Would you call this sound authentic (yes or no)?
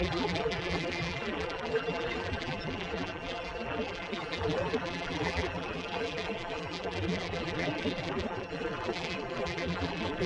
no